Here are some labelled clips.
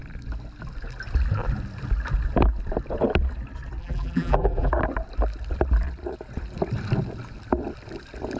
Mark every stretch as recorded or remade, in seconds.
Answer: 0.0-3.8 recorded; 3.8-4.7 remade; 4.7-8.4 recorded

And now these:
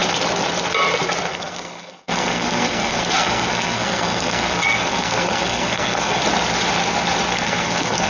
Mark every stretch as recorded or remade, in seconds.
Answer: 0.0-1.3 recorded; 1.3-6.2 remade; 6.2-7.3 recorded; 7.3-8.1 remade